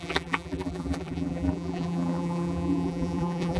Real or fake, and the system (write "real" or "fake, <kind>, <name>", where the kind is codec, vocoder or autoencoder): fake, vocoder, BigVGAN v2